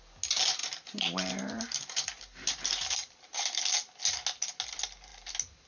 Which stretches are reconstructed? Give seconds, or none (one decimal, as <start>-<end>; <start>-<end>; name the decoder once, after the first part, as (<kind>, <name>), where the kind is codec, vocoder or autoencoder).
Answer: 0.6-4.0 (vocoder, BigVGAN v2)